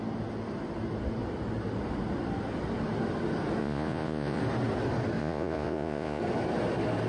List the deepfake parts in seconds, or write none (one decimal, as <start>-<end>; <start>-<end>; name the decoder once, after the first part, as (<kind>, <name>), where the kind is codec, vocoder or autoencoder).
3.6-4.4 (vocoder, Vocos); 5.2-6.2